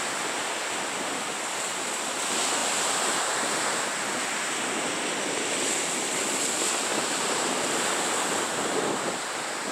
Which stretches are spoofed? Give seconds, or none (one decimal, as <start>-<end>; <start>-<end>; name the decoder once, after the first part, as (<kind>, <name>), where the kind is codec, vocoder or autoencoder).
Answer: 6.9-7.5 (vocoder, BigVGAN v2)